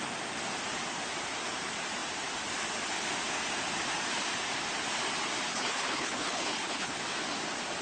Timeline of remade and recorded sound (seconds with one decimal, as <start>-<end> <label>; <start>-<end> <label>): 0.0-5.5 recorded; 5.5-7.0 remade; 7.0-7.8 recorded